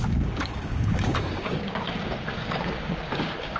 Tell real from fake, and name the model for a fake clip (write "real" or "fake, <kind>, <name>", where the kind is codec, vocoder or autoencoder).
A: fake, codec, DAC